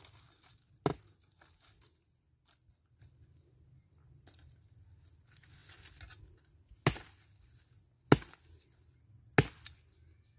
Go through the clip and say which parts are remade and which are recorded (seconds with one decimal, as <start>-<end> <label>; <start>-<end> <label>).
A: 0.0-10.4 recorded